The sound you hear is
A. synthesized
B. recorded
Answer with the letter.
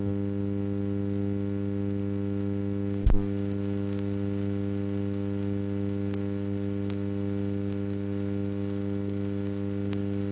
B